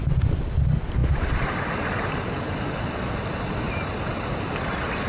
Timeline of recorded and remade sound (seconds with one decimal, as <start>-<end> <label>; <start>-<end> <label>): 0.0-5.1 recorded